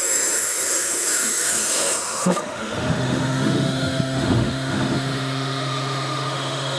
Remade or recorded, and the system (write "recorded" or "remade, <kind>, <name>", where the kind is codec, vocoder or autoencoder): remade, autoencoder, DAC-VAE